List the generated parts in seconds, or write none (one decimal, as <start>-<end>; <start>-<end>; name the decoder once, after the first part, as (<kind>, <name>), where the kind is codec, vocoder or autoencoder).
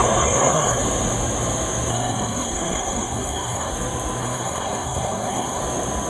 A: 0.0-0.8 (codec, SNAC); 1.9-3.7; 4.2-5.6